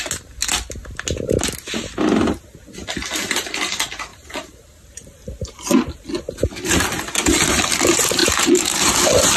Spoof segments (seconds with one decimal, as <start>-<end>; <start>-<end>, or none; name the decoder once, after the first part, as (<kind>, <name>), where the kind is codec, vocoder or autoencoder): 4.1-6.1 (vocoder, BigVGAN v2); 8.2-8.9